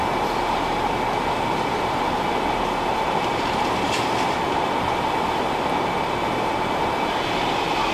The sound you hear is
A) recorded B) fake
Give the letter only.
A